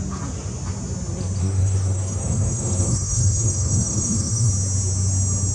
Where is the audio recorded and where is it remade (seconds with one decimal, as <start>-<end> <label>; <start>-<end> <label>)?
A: 0.0-1.4 recorded; 1.4-4.5 remade; 4.5-5.5 recorded